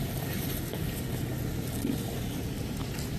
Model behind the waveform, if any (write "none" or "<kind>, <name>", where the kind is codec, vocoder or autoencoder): none